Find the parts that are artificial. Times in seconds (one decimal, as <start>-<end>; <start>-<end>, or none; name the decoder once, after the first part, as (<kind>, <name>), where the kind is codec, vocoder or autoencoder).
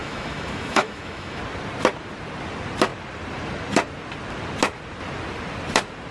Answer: 0.0-1.4 (autoencoder, DAC-VAE)